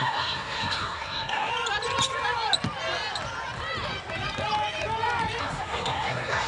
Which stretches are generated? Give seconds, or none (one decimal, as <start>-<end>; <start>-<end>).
0.0-1.5; 5.4-6.5